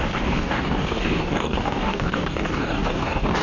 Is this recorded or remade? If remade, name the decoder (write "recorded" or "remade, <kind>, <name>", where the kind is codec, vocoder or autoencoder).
remade, codec, DAC